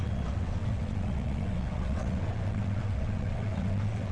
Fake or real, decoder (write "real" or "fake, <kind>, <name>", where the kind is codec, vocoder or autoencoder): fake, vocoder, WaveNeXt